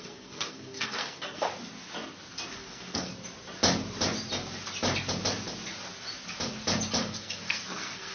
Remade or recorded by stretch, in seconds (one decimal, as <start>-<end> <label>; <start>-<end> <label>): 0.0-1.5 remade; 1.5-2.5 recorded; 2.5-3.1 remade; 3.1-7.0 recorded; 7.0-8.1 remade